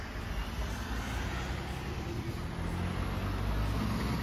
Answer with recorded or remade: recorded